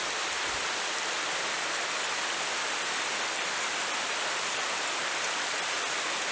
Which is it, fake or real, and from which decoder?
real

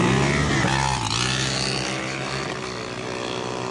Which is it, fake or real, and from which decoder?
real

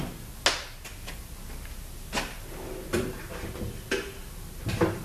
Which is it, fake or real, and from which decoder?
real